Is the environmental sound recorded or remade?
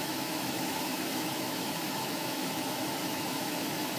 remade